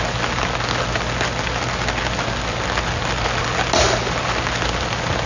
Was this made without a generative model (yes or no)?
yes